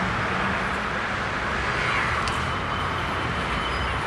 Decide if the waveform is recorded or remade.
recorded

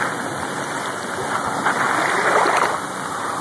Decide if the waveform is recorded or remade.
recorded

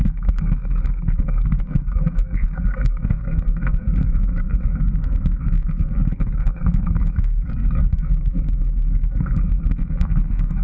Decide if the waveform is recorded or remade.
remade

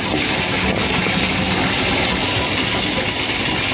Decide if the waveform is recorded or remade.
recorded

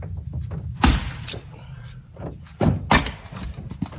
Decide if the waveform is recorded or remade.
recorded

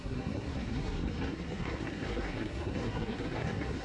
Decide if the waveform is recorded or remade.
remade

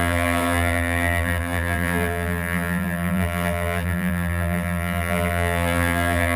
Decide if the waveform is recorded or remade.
remade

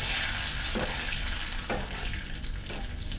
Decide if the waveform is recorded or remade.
recorded